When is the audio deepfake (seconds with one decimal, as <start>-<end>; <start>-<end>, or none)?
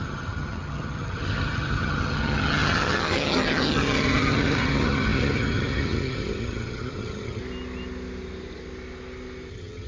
0.0-7.4; 9.5-9.9